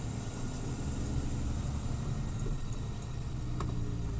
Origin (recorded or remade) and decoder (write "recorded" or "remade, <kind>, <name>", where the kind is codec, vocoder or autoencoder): recorded